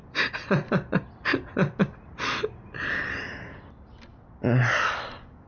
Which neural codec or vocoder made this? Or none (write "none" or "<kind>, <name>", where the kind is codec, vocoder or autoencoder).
none